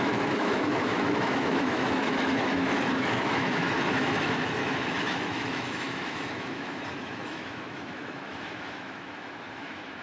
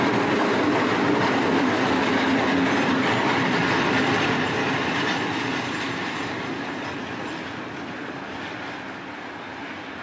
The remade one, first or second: first